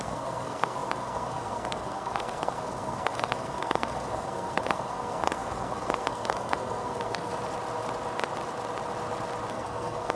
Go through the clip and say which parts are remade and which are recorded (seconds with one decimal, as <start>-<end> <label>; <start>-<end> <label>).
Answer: 0.0-7.3 remade; 7.3-9.5 recorded; 9.5-10.2 remade